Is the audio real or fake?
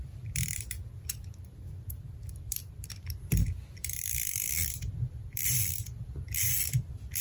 fake